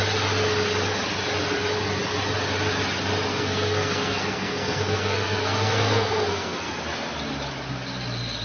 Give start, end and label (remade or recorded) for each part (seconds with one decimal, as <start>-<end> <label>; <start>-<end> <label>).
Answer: 0.0-3.3 recorded; 3.3-6.8 remade; 6.8-8.4 recorded